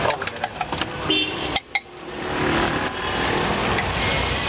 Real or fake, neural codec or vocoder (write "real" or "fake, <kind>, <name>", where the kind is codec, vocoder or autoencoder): real